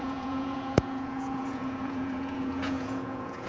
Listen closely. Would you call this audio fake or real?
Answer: fake